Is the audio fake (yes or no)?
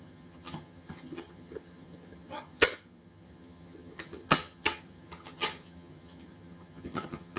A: yes